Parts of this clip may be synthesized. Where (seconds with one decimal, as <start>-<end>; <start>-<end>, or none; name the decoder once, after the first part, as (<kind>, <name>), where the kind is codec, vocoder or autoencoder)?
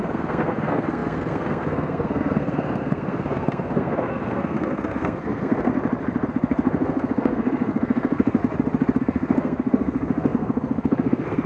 0.0-5.7 (codec, SNAC); 6.3-8.4; 9.0-11.5